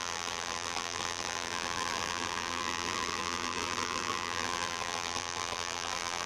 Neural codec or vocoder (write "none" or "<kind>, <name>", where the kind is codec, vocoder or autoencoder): vocoder, BigVGAN v2